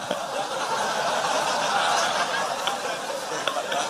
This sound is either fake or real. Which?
real